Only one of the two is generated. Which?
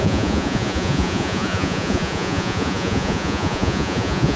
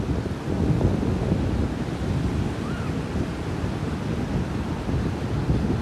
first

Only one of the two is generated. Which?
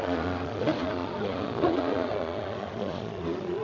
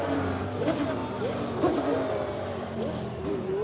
first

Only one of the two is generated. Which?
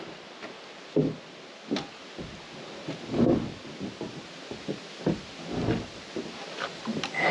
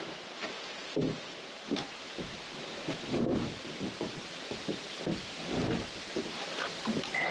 second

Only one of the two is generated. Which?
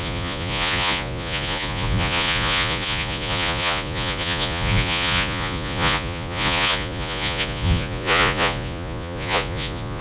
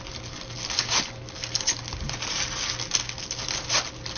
first